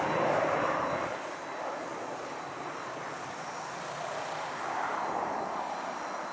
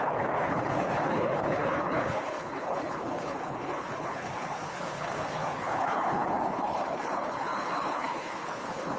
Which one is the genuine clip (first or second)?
first